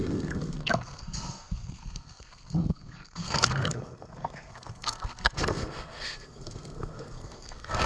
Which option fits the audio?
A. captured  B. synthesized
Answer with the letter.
B